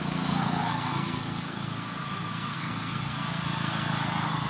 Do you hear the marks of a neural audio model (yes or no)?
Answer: yes